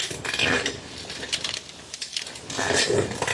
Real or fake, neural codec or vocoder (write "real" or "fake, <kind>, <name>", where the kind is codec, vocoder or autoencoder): fake, vocoder, BigVGAN v2